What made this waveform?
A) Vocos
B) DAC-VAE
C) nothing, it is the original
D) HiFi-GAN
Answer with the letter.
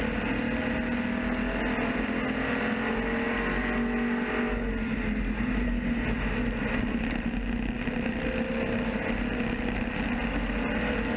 C